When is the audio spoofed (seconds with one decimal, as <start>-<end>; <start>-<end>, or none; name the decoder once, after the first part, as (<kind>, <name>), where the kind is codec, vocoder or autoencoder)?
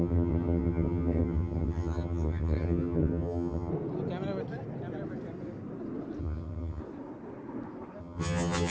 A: 0.0-3.7 (vocoder, HiFi-GAN); 6.2-6.8; 8.0-8.7